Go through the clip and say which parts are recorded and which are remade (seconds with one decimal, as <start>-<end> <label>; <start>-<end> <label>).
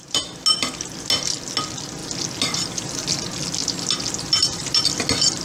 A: 0.0-5.4 recorded